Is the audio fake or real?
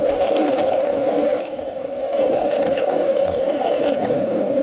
fake